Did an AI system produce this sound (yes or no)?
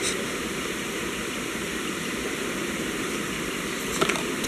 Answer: yes